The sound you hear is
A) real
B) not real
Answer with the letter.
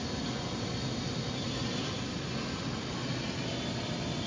A